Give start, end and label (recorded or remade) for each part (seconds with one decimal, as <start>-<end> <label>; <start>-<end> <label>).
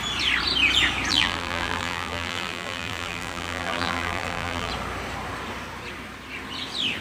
0.0-1.1 recorded; 1.1-4.7 remade; 4.7-7.0 recorded